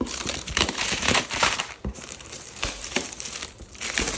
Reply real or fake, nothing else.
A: fake